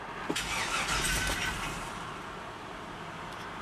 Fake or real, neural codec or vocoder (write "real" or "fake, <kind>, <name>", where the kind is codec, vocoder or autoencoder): real